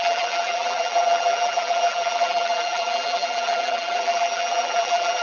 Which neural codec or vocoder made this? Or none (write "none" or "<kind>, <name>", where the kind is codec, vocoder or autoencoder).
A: vocoder, BigVGAN v2